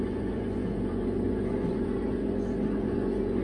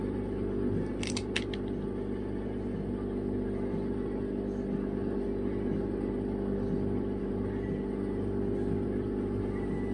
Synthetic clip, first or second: first